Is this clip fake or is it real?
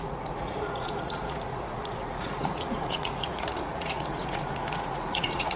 fake